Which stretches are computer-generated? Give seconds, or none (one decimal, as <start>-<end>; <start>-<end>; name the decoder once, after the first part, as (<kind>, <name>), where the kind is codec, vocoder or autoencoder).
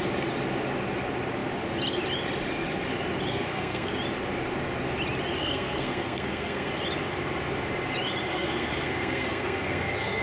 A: 3.3-3.9 (codec, SNAC); 5.4-6.7; 8.3-10.2